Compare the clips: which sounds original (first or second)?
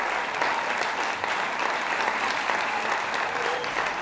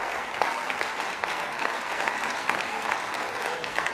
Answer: first